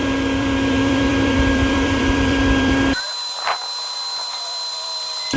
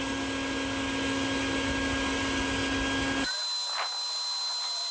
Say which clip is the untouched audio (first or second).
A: second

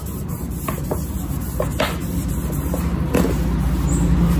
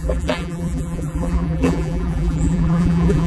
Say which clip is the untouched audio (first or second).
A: first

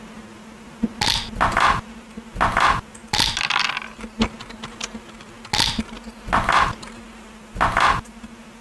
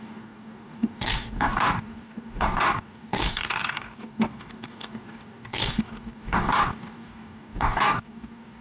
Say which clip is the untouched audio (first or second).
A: first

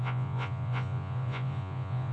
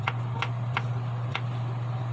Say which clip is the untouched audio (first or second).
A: second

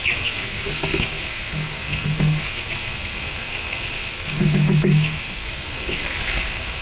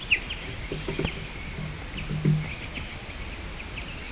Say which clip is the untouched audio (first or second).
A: second